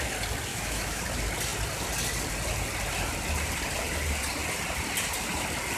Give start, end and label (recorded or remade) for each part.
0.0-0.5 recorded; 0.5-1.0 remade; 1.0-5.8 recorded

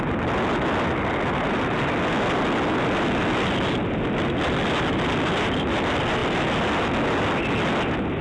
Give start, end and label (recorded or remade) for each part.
0.0-8.2 recorded

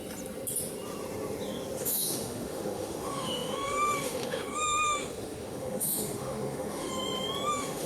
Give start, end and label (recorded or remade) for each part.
0.0-1.8 recorded; 1.8-6.9 remade; 6.9-7.5 recorded; 7.5-7.9 remade

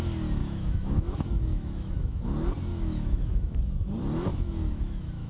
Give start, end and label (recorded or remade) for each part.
0.0-0.4 recorded; 0.4-2.3 remade; 2.3-2.7 recorded; 2.7-3.6 remade; 3.6-4.3 recorded; 4.3-5.3 remade

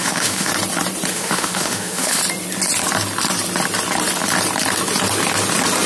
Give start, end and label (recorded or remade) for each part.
0.0-0.5 remade; 0.5-1.1 recorded; 1.1-2.2 remade; 2.2-5.9 recorded

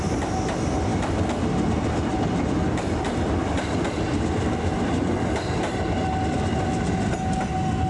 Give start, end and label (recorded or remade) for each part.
0.0-7.9 recorded

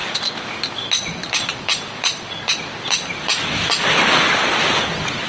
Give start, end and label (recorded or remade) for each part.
0.0-5.3 recorded

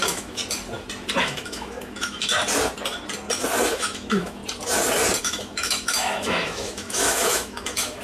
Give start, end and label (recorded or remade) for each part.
0.0-0.4 remade; 0.4-1.2 recorded; 1.2-2.4 remade; 2.4-3.7 recorded; 3.7-4.4 remade; 4.4-5.2 recorded; 5.2-8.0 remade